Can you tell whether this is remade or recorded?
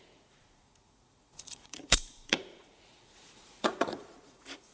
remade